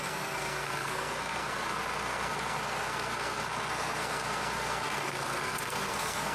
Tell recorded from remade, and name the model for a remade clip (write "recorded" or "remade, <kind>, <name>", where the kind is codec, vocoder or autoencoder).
remade, codec, SNAC